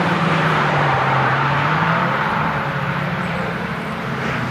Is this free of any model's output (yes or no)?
no